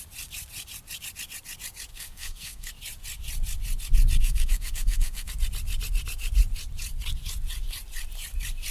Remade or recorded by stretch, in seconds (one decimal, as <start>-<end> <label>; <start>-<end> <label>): 0.0-1.9 recorded; 1.9-2.7 remade; 2.7-4.2 recorded; 4.2-5.3 remade; 5.3-8.7 recorded